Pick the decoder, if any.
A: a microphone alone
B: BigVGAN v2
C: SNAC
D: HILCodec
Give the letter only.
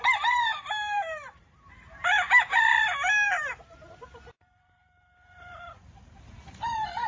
B